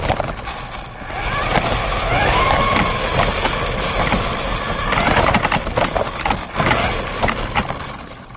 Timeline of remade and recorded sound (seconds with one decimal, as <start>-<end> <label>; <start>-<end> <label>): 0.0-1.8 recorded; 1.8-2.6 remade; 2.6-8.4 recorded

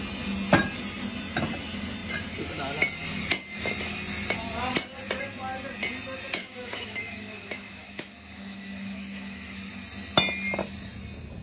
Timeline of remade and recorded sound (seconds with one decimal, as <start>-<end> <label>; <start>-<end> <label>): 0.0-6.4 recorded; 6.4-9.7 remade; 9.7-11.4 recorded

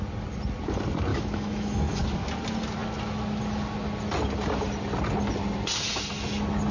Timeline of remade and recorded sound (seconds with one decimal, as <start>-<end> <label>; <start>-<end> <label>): 0.0-1.1 recorded; 1.1-2.0 remade; 2.0-6.7 recorded

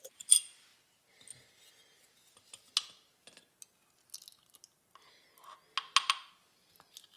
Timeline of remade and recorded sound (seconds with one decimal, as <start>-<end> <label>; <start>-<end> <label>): 0.0-7.2 recorded

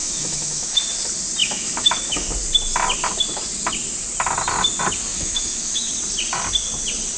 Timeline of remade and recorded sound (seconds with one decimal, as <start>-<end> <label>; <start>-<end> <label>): 0.0-0.8 remade; 0.8-1.4 recorded; 1.4-2.3 remade; 2.3-5.1 recorded; 5.1-5.9 remade; 5.9-7.2 recorded

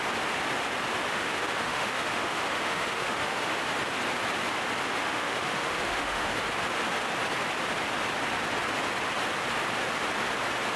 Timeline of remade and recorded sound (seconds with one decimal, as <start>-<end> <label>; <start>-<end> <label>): 0.0-1.1 recorded; 1.1-3.6 remade; 3.6-5.0 recorded; 5.0-6.3 remade; 6.3-10.8 recorded

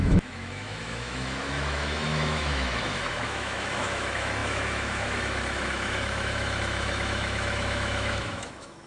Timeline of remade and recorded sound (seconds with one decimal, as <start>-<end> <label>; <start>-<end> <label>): 0.0-8.9 remade

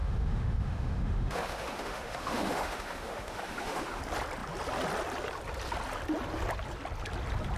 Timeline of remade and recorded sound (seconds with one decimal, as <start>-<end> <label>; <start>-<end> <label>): 0.0-4.0 remade; 4.0-7.6 recorded